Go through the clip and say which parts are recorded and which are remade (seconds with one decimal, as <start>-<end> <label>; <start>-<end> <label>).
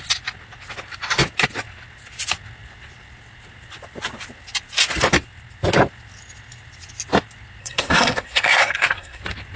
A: 0.0-7.6 recorded; 7.6-9.2 remade; 9.2-9.6 recorded